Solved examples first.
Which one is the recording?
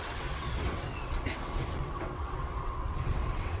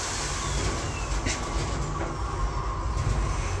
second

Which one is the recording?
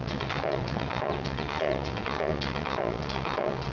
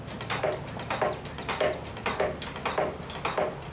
second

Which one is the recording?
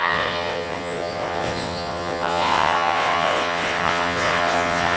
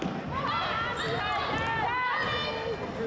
second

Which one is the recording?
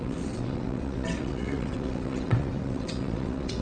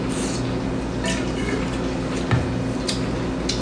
second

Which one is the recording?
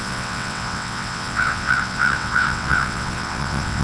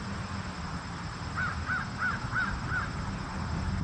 second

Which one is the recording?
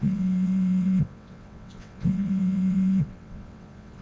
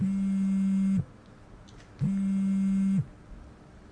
second